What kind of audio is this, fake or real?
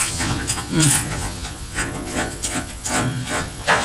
fake